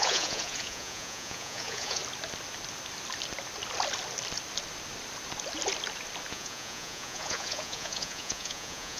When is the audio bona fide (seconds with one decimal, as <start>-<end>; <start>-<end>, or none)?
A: 2.0-6.3